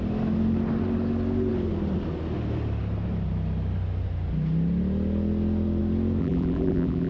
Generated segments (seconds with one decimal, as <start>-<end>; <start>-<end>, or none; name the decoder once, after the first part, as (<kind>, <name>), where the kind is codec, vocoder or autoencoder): 6.2-7.1 (vocoder, BigVGAN v2)